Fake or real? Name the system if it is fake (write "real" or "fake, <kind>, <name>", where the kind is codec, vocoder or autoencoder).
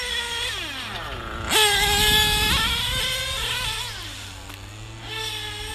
real